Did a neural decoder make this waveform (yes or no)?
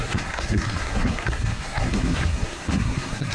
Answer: yes